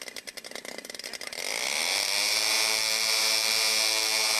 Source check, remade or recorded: recorded